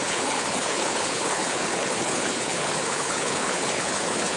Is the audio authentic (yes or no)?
no